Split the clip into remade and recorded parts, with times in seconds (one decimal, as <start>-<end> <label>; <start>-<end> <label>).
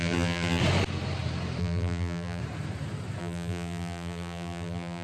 0.0-0.6 remade; 0.6-1.6 recorded; 1.6-2.4 remade; 2.4-3.2 recorded; 3.2-5.0 remade